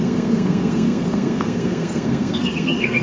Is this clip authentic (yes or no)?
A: no